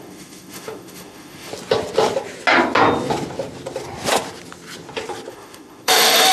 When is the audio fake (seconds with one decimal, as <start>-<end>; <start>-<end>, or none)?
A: 0.0-1.5; 5.3-6.3